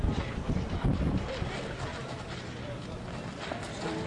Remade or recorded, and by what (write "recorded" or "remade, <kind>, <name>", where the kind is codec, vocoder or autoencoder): recorded